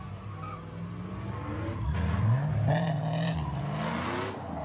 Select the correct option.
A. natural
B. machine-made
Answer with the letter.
A